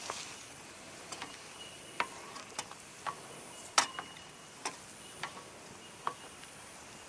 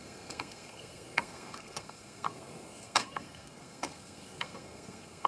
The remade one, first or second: second